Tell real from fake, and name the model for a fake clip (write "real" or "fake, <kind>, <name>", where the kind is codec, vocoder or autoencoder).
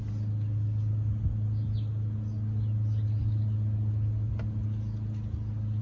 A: real